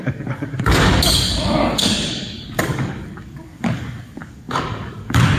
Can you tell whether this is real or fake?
fake